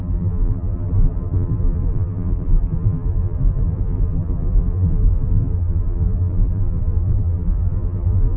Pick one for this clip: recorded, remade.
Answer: remade